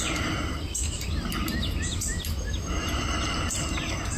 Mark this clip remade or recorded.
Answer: recorded